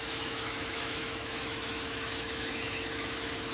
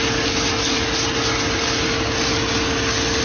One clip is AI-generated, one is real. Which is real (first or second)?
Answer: second